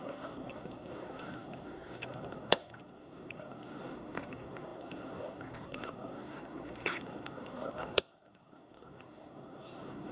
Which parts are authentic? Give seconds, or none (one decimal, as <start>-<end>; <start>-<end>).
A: none